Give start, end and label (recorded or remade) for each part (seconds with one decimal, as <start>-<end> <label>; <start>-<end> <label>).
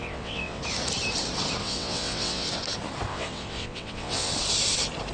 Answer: 0.0-0.6 remade; 0.6-1.6 recorded; 1.6-2.5 remade; 2.5-3.1 recorded; 3.1-4.3 remade; 4.3-5.1 recorded